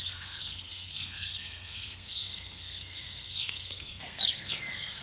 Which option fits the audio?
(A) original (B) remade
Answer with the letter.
B